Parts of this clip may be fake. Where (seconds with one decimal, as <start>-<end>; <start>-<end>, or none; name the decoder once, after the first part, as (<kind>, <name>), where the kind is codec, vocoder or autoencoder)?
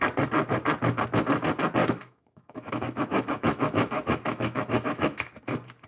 1.8-5.3 (autoencoder, DAC-VAE)